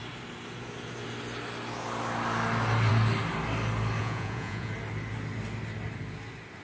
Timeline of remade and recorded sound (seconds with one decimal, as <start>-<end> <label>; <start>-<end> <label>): 0.0-4.0 recorded; 4.0-4.7 remade; 4.7-6.6 recorded